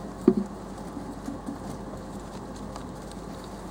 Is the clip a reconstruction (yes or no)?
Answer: no